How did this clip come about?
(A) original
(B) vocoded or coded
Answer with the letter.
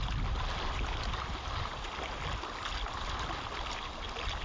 A